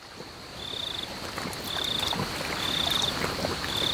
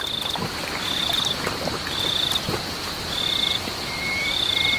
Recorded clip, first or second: first